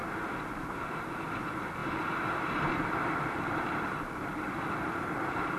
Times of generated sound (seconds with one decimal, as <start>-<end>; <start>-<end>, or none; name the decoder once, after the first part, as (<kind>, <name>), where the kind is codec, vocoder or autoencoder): 1.0-1.8 (vocoder, BigVGAN v2); 2.7-5.6